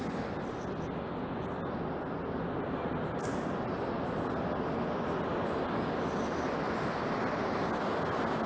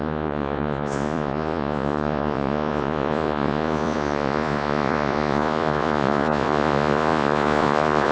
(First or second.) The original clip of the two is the first